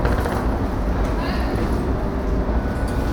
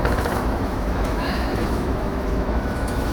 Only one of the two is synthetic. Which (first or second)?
second